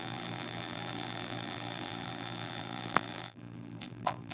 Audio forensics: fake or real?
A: fake